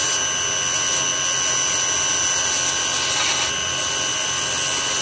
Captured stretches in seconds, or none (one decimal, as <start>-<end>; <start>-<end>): 0.0-5.0